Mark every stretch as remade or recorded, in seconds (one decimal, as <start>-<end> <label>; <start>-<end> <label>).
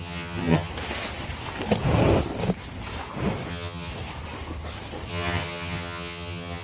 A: 0.0-0.7 remade; 0.7-3.5 recorded; 3.5-3.9 remade; 3.9-5.1 recorded; 5.1-6.6 remade